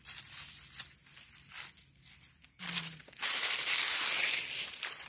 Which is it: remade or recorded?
recorded